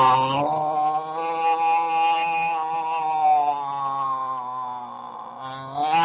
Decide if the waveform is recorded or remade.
recorded